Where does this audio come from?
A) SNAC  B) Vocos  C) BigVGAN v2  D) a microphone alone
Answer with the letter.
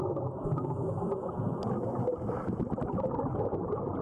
D